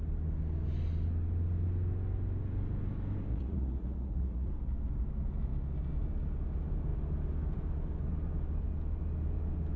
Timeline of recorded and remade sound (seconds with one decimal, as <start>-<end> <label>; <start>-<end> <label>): 0.0-3.3 recorded; 3.3-4.5 remade; 4.5-9.8 recorded